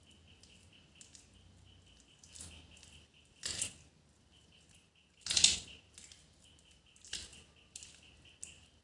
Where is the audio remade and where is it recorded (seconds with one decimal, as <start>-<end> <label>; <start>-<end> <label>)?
0.0-8.8 recorded